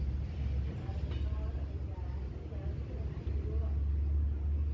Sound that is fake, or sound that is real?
real